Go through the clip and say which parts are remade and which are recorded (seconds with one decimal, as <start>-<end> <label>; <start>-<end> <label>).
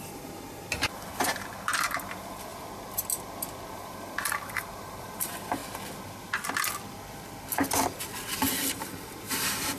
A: 0.0-2.5 remade; 2.5-3.7 recorded; 3.7-5.6 remade; 5.6-8.7 recorded; 8.7-9.8 remade